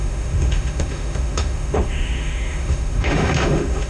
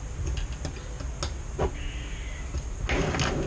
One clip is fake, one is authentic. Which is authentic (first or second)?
second